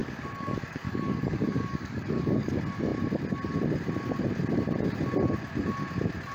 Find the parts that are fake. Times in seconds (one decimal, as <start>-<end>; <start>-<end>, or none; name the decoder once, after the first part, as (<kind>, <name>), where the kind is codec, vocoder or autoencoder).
0.0-2.5 (codec, DAC)